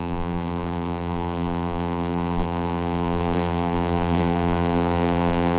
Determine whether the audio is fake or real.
fake